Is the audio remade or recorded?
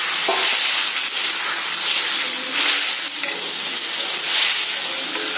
recorded